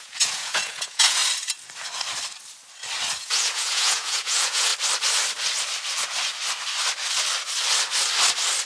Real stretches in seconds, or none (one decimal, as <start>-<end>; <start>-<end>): 1.2-3.2; 4.7-8.7

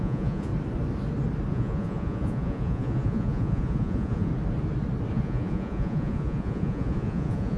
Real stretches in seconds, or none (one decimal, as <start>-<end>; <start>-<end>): 0.5-1.5; 4.3-5.1

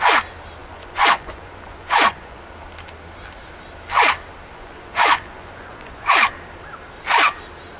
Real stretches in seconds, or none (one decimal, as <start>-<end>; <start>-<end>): 0.0-0.6; 2.4-4.5; 6.1-7.8

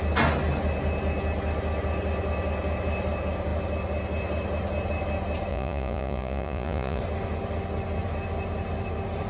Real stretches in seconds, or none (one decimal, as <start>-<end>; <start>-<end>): 0.0-5.5; 7.0-9.3

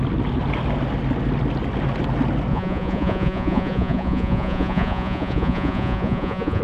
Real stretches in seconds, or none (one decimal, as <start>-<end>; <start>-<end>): 0.0-2.5